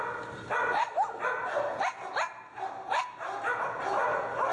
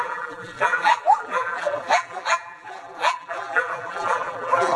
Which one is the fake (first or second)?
second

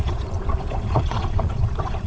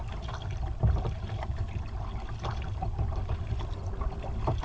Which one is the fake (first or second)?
first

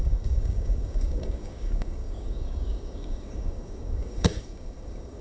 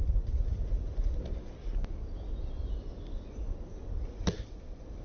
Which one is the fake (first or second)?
first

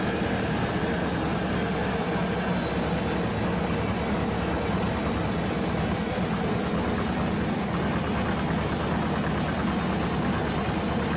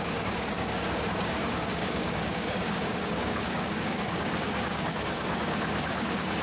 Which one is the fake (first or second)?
second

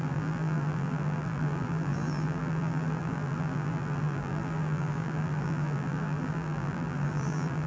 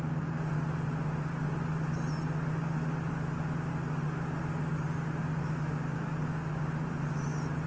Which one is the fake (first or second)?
first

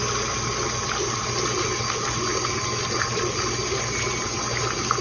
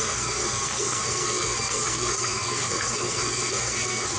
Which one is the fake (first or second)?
second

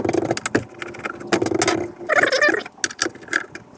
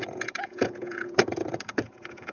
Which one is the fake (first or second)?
second